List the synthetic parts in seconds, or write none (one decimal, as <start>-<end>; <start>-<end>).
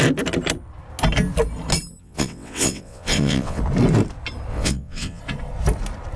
2.0-3.6; 4.5-5.2